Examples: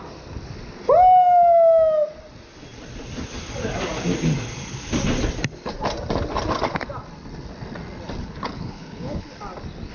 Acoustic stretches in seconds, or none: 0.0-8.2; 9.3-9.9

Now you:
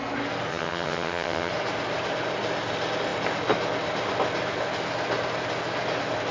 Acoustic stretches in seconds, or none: 0.0-0.5; 1.5-6.3

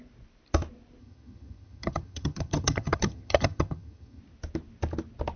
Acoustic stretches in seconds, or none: 0.0-1.0; 4.2-5.4

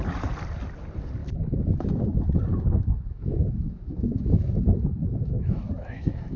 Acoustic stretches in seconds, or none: 0.0-1.2; 2.0-2.5

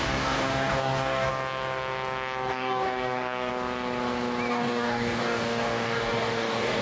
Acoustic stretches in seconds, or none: 1.3-2.5; 3.5-4.5

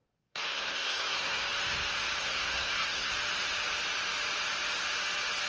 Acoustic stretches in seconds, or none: 1.4-2.2; 3.1-5.5

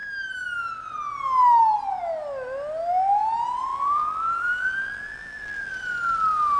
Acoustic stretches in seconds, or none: 0.0-3.7; 5.7-6.6

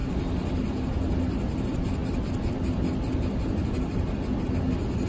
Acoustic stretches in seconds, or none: 0.0-5.1